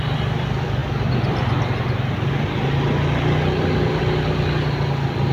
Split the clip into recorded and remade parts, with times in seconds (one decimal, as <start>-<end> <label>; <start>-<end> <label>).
0.0-5.3 recorded